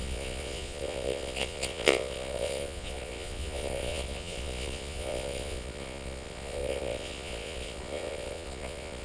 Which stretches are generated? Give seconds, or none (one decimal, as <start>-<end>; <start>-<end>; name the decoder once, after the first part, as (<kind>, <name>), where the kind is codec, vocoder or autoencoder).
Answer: 0.0-9.0 (vocoder, Vocos)